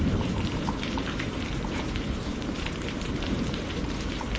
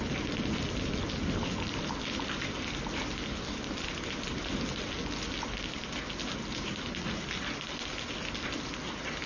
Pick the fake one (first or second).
first